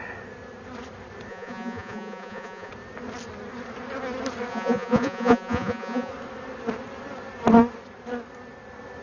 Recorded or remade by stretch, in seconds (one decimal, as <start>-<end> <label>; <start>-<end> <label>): 0.0-1.3 recorded; 1.3-2.7 remade; 2.7-4.5 recorded; 4.5-6.1 remade; 6.1-9.0 recorded